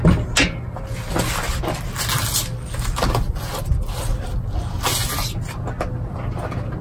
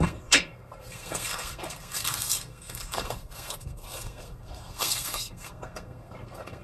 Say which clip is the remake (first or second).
second